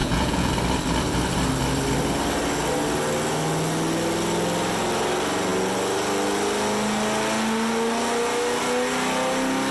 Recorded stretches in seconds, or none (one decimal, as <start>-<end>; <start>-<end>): 0.5-9.7